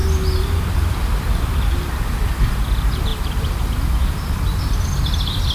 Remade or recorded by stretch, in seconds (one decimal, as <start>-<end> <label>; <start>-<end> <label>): 0.0-0.6 recorded; 0.6-5.5 remade

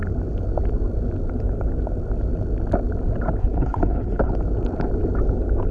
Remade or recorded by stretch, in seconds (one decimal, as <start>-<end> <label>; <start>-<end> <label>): 0.0-3.4 recorded; 3.4-4.3 remade; 4.3-5.7 recorded

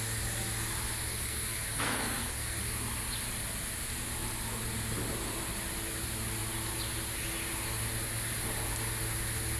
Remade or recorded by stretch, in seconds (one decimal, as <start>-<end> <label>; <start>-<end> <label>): 0.0-1.1 recorded; 1.1-2.6 remade; 2.6-9.6 recorded

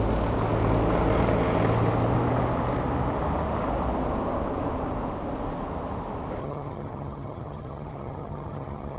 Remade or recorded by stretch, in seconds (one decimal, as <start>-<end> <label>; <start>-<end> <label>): 0.0-6.4 recorded; 6.4-9.0 remade

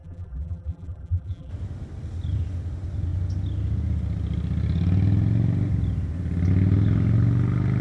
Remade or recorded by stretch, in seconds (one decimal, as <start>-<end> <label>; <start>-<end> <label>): 0.0-1.5 remade; 1.5-7.8 recorded

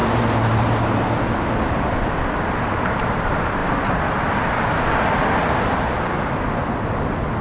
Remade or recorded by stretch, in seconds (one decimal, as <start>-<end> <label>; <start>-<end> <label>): 0.0-7.4 recorded

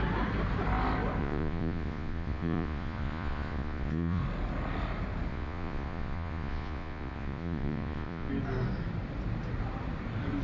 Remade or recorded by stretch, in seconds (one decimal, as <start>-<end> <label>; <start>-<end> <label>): 0.0-1.2 recorded; 1.2-4.2 remade; 4.2-5.3 recorded; 5.3-8.3 remade; 8.3-10.4 recorded

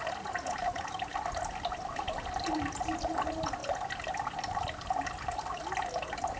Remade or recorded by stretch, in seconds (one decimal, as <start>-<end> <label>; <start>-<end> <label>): 0.0-6.4 recorded